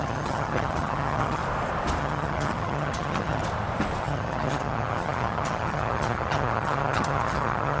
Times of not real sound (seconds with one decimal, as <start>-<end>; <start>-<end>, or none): 0.0-1.4; 2.0-3.4; 4.0-7.8